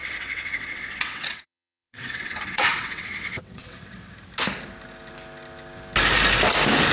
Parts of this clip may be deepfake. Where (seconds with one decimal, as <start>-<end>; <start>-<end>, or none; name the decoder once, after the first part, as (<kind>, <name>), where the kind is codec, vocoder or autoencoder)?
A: 0.0-4.1 (vocoder, WaveNeXt)